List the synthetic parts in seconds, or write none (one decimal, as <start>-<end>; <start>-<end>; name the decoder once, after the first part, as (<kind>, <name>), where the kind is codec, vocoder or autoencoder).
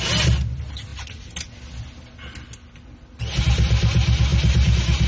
none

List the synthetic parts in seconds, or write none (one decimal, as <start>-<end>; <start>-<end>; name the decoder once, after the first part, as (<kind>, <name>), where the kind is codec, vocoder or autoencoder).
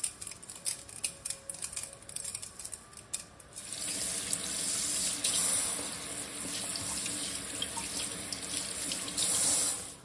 none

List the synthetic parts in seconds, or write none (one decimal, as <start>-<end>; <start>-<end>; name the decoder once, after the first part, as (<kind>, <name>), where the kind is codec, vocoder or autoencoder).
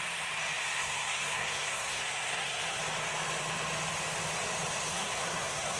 0.6-2.8 (codec, SNAC); 4.9-5.8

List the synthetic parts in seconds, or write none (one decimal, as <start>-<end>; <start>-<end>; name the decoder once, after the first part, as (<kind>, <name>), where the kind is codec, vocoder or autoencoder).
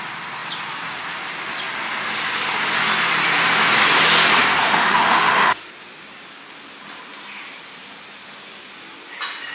4.6-5.7 (autoencoder, DAC-VAE)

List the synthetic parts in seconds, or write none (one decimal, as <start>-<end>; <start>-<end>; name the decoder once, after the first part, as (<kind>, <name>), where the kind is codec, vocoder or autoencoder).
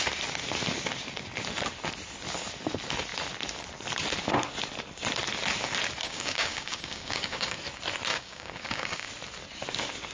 6.0-7.6 (codec, DAC); 8.1-9.1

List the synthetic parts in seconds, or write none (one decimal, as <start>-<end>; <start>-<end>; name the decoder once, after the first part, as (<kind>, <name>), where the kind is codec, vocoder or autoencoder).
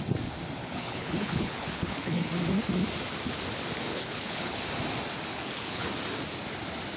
0.6-2.3 (codec, HILCodec); 3.9-4.6; 5.3-5.9